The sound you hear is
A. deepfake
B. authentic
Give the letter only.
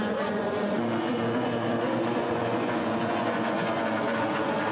A